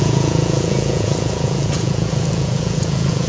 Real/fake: fake